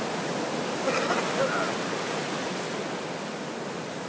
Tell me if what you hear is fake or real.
real